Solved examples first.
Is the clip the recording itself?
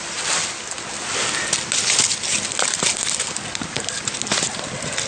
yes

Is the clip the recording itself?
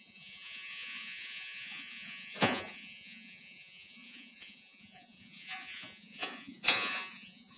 no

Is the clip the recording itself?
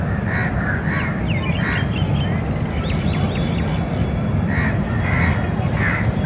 yes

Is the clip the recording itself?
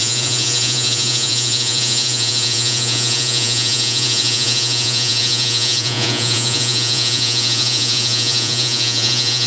no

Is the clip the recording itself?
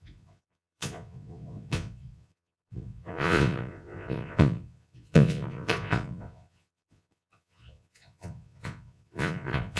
no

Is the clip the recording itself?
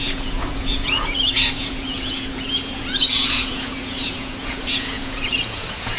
no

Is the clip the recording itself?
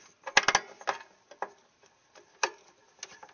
yes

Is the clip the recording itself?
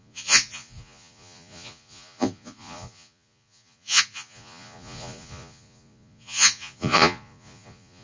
no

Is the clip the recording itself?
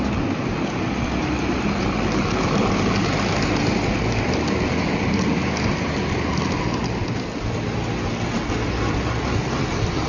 yes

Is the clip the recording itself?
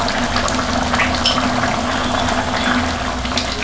yes